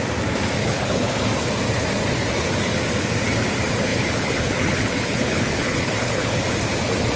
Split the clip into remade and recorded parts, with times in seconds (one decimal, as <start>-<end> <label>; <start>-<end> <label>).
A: 0.0-0.6 recorded; 0.6-1.3 remade; 1.3-3.9 recorded; 3.9-6.4 remade; 6.4-7.2 recorded